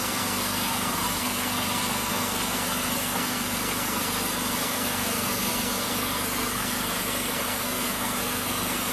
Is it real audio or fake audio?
fake